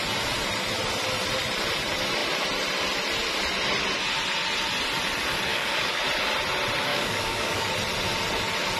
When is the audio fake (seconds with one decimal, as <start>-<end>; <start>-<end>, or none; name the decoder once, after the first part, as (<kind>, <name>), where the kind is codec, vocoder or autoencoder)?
5.5-6.0 (codec, DAC); 6.9-7.7